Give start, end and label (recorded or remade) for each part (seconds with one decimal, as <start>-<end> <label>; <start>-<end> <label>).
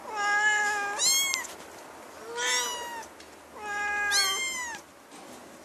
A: 0.0-5.6 recorded